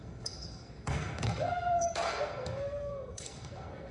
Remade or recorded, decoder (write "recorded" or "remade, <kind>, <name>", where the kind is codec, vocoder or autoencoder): remade, codec, SNAC